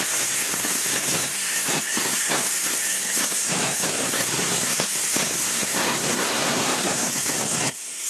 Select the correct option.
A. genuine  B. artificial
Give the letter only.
B